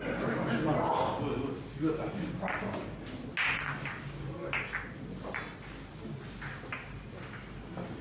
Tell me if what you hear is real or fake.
real